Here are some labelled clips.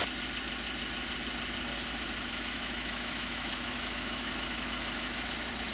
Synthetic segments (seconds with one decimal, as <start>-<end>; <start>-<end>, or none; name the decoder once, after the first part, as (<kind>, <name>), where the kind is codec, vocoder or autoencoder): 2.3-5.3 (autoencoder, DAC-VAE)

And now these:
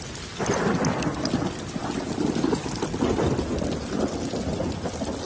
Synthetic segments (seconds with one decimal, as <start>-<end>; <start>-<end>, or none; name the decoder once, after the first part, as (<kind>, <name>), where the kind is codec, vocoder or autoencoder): none

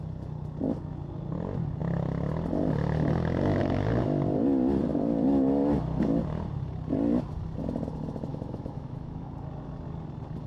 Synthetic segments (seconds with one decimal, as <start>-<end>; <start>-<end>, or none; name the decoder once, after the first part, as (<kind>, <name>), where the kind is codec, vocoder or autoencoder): 8.3-9.3 (autoencoder, DAC-VAE)

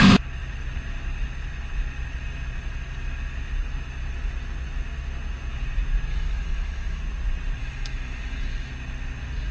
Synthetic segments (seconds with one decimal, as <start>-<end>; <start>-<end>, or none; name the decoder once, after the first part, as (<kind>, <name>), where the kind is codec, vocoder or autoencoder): 6.1-7.0 (autoencoder, DAC-VAE); 7.6-8.7